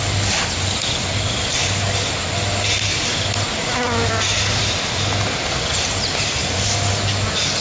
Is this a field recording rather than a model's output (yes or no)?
yes